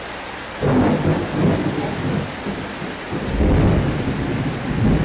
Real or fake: real